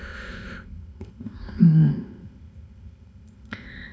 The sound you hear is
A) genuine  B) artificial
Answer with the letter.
B